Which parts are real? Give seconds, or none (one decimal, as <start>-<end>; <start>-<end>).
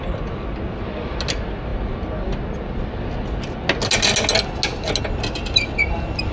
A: 0.0-6.3